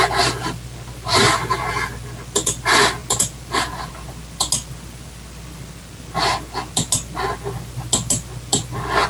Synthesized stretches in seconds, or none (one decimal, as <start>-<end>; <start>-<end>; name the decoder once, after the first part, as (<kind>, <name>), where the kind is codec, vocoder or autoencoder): none

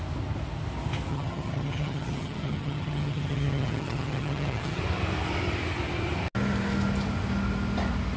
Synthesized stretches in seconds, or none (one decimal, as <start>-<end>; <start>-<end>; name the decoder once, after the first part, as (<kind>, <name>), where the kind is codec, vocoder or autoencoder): 1.1-4.8 (vocoder, HiFi-GAN)